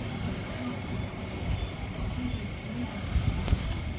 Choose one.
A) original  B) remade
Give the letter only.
A